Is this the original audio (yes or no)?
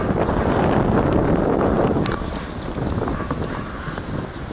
yes